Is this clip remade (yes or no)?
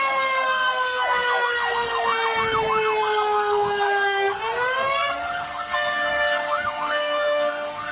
yes